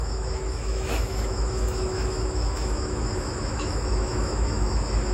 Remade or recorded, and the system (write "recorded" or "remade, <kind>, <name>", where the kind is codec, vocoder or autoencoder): remade, autoencoder, DAC-VAE